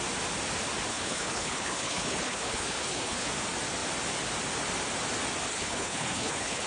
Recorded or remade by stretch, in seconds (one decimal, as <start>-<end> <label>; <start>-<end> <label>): 0.0-0.9 recorded; 0.9-3.3 remade; 3.3-5.5 recorded; 5.5-6.7 remade